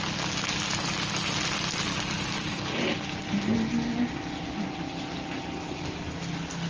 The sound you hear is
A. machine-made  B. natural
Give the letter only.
B